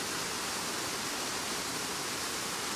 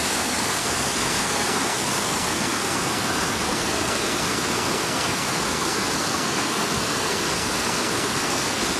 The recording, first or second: first